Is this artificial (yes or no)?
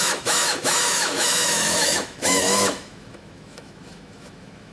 yes